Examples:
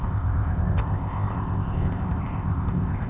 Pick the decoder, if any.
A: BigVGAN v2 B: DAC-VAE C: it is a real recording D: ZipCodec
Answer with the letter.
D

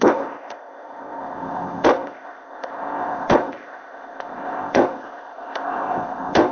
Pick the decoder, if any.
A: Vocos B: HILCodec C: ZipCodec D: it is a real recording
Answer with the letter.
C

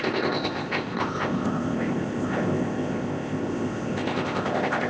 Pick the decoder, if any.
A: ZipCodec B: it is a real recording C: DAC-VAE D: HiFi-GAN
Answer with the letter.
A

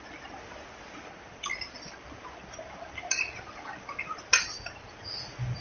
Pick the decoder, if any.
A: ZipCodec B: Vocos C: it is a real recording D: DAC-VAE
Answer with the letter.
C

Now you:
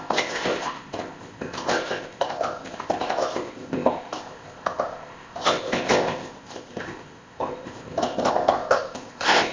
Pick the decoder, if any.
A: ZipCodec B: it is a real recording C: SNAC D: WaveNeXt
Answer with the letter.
A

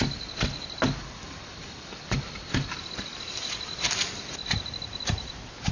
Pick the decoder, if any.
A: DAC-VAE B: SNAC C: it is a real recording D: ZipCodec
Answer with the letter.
C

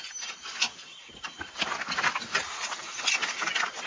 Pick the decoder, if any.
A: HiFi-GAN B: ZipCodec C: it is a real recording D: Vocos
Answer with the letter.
C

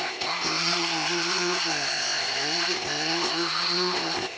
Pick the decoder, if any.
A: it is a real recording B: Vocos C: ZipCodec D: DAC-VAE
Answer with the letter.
C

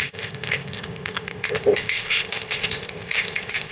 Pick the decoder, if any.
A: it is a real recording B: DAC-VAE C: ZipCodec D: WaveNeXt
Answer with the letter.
C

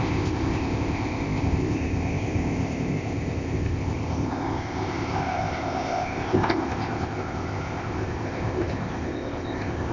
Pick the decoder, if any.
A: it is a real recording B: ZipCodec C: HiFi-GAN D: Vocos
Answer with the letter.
B